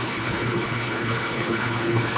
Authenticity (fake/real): fake